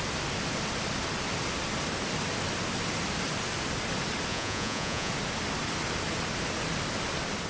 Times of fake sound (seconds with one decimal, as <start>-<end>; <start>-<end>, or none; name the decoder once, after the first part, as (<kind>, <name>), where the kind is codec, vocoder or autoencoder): 4.3-5.1 (vocoder, Vocos)